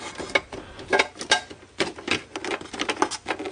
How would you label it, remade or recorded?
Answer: recorded